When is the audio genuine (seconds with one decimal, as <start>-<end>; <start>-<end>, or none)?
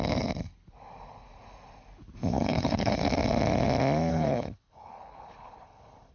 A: 0.0-2.3; 2.9-4.1